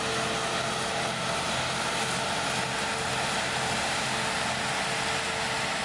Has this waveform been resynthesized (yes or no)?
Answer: no